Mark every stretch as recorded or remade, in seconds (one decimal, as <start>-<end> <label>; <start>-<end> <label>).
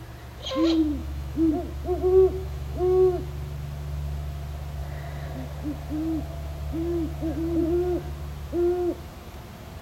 0.0-1.0 recorded; 1.0-1.5 remade; 1.5-2.4 recorded; 2.4-3.2 remade; 3.2-9.8 recorded